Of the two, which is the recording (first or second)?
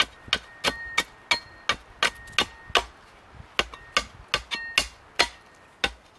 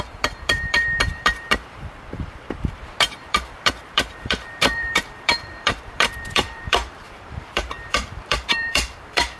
first